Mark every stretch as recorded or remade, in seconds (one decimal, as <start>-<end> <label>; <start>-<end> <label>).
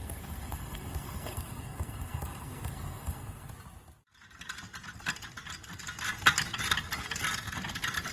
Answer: 0.0-3.5 remade; 3.5-8.1 recorded